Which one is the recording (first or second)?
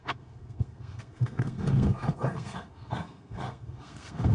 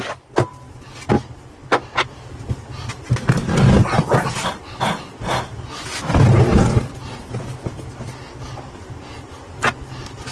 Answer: second